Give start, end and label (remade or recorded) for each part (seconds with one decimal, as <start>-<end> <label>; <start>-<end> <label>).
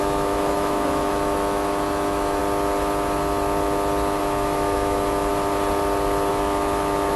0.0-2.4 remade; 2.4-4.2 recorded; 4.2-5.3 remade; 5.3-6.3 recorded; 6.3-7.2 remade